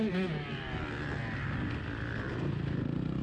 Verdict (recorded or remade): recorded